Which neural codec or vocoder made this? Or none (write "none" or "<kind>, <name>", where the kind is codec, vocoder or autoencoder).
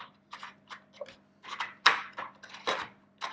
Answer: none